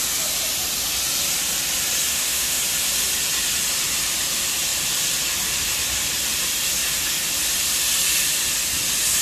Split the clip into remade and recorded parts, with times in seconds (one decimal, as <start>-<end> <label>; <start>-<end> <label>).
0.0-2.1 recorded; 2.1-2.6 remade; 2.6-9.2 recorded